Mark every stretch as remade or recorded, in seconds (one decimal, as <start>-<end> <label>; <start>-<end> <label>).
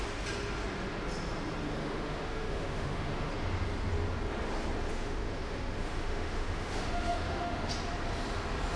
0.0-1.8 recorded; 1.8-3.3 remade; 3.3-4.9 recorded; 4.9-7.7 remade; 7.7-8.8 recorded